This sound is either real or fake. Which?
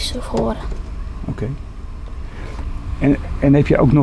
real